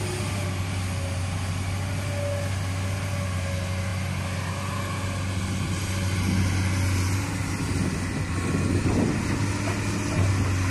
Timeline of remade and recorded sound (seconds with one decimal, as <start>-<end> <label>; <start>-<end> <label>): 0.0-10.7 recorded